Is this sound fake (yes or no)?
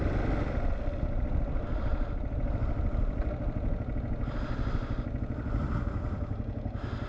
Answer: no